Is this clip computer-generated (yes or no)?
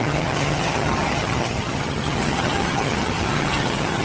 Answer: yes